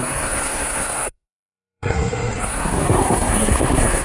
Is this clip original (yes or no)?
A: no